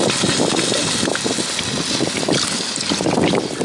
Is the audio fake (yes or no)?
no